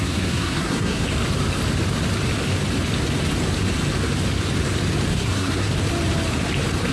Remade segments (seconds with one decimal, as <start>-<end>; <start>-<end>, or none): 0.0-1.0; 5.1-5.7